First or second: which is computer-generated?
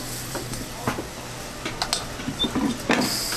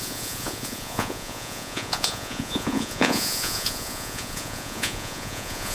second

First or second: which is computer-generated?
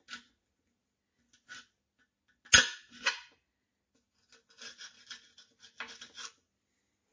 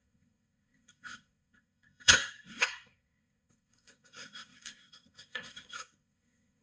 second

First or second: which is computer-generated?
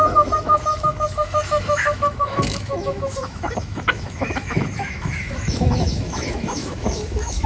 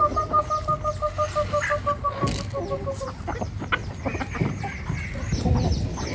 first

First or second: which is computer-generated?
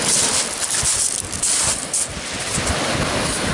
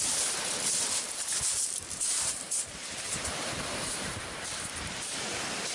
second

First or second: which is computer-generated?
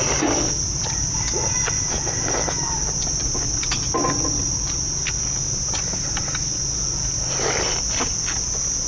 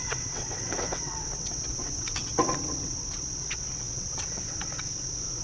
second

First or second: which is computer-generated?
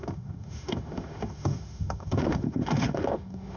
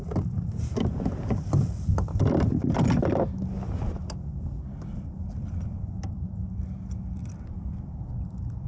first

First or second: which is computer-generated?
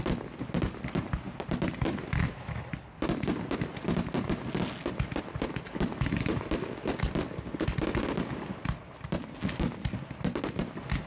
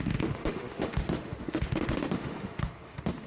second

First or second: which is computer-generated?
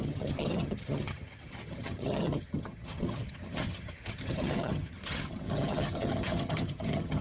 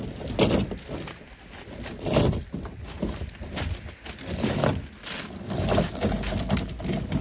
first